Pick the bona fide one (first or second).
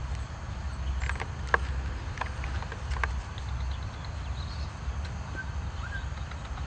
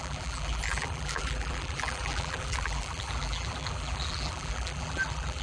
first